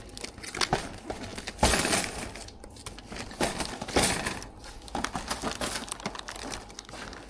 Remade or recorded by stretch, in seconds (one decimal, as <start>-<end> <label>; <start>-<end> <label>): 0.0-7.3 recorded